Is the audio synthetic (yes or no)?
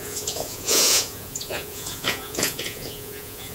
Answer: yes